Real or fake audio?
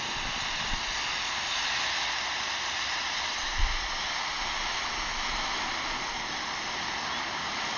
real